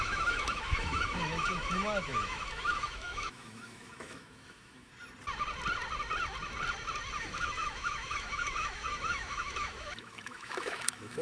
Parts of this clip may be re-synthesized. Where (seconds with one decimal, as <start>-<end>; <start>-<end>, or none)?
0.0-4.9; 7.2-11.2